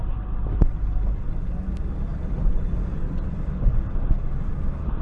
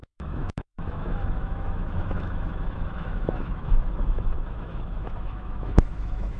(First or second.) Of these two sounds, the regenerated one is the second